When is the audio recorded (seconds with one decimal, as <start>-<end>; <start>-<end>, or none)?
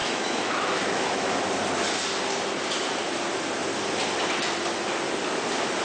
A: 1.3-5.8